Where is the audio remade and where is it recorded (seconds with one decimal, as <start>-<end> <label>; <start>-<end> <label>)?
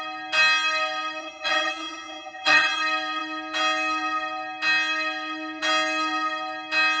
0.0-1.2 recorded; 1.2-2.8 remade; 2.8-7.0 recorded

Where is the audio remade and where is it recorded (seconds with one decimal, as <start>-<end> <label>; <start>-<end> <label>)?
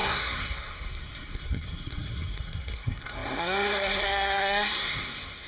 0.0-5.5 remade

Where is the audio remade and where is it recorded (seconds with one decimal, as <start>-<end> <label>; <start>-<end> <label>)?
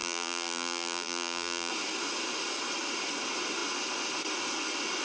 0.0-1.7 remade; 1.7-5.0 recorded